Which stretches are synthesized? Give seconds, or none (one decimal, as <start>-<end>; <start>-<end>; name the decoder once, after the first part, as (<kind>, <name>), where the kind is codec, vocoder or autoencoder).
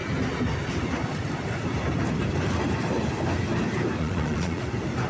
4.0-4.6 (vocoder, Vocos)